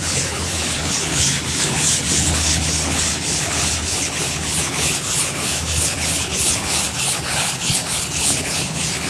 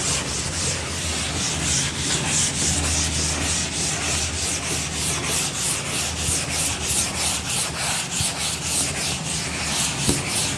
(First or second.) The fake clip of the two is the first